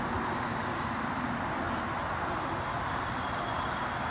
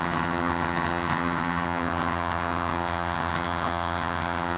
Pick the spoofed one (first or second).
second